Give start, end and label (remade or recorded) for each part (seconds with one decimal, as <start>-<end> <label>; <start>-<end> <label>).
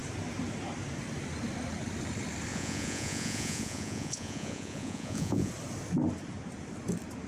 0.0-2.5 recorded; 2.5-5.5 remade; 5.5-7.3 recorded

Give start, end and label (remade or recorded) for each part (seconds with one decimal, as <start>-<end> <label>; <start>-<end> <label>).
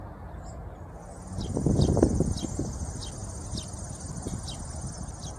0.0-5.4 recorded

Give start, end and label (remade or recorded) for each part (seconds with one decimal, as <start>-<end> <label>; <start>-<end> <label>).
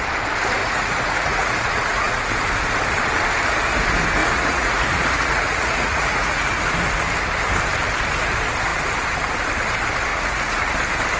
0.0-0.6 recorded; 0.6-2.2 remade; 2.2-4.2 recorded; 4.2-6.5 remade; 6.5-10.1 recorded; 10.1-10.7 remade; 10.7-11.2 recorded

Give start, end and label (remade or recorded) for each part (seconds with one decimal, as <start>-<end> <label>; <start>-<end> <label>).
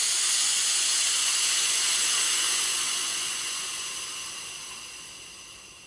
0.0-0.4 recorded; 0.4-3.9 remade; 3.9-5.9 recorded